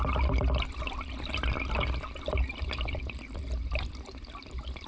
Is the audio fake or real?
real